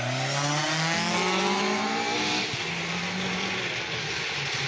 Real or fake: real